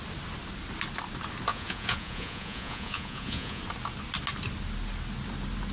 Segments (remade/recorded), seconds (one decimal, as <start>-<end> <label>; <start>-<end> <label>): 0.0-1.5 recorded; 1.5-3.6 remade; 3.6-5.7 recorded